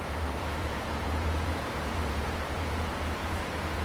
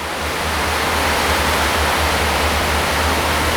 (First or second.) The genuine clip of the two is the second